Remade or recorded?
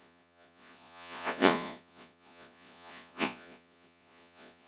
remade